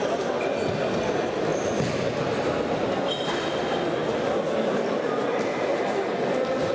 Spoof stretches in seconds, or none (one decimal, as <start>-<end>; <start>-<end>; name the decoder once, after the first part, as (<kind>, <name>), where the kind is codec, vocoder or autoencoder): none